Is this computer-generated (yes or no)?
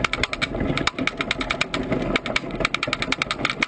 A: no